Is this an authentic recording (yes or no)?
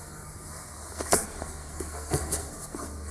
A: no